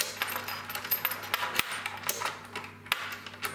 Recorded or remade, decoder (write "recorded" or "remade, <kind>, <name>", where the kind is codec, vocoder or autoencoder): recorded